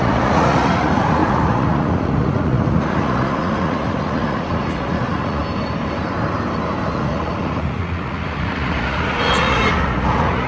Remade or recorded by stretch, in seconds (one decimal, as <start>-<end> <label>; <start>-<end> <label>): 0.0-5.4 remade; 5.4-6.9 recorded; 6.9-10.5 remade